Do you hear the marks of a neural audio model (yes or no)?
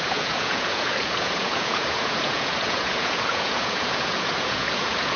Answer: yes